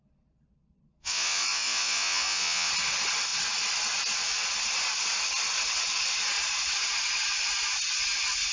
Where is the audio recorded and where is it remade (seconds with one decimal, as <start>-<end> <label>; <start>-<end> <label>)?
0.0-1.0 recorded; 1.0-2.7 remade; 2.7-8.5 recorded